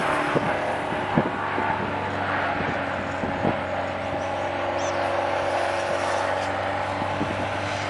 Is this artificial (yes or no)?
no